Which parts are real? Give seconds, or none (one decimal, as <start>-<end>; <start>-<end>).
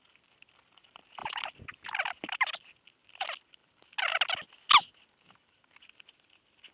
0.0-6.7